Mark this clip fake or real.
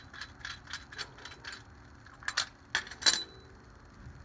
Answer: real